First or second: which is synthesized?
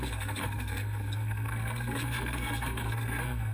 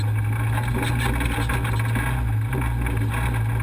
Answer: first